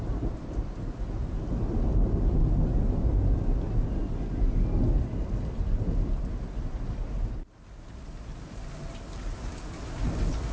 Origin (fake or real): real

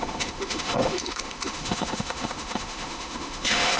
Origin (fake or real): fake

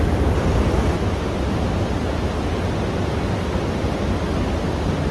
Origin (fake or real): real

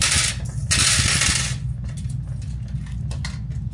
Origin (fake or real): real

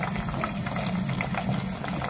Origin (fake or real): real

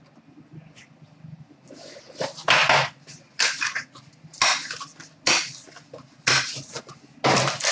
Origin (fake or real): real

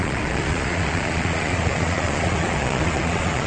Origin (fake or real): fake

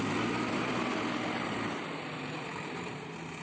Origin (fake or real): fake